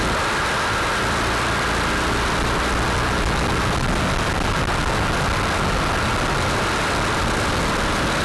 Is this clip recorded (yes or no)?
yes